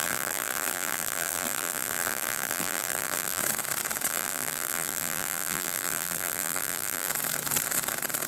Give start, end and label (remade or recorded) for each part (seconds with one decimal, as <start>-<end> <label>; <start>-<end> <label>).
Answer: 0.0-3.4 remade; 3.4-4.1 recorded; 4.1-7.1 remade; 7.1-8.3 recorded